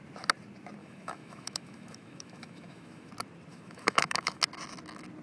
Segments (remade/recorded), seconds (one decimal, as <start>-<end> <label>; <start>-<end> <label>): 0.0-0.8 recorded; 0.8-3.1 remade; 3.1-3.5 recorded; 3.5-4.4 remade; 4.4-5.2 recorded